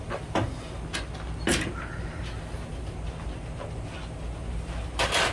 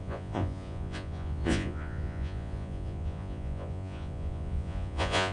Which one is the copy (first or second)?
second